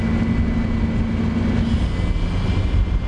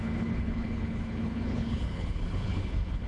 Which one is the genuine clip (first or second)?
first